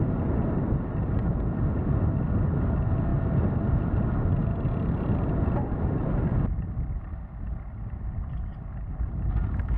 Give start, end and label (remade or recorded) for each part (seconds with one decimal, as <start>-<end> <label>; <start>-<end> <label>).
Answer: 0.0-9.8 recorded